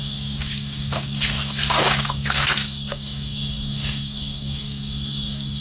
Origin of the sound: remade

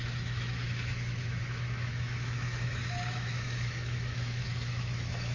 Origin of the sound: remade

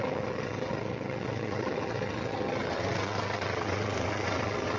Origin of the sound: remade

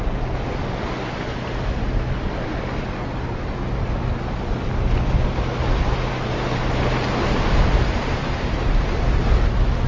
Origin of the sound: recorded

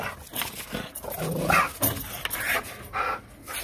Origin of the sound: recorded